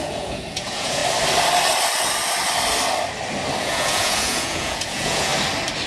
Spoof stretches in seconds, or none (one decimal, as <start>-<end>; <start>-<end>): 0.0-1.0; 3.6-5.3